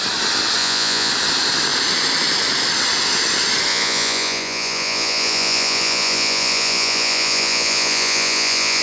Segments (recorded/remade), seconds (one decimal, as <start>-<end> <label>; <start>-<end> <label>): 0.0-0.6 recorded; 0.6-1.1 remade; 1.1-3.7 recorded; 3.7-8.8 remade